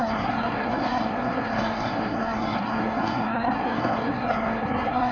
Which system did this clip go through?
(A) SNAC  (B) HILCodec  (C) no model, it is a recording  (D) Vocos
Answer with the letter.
A